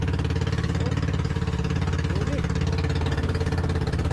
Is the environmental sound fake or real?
real